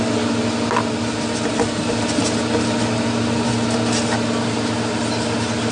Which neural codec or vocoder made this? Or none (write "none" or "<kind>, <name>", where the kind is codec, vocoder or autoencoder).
none